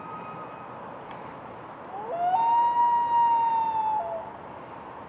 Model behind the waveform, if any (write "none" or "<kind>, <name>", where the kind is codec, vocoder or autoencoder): none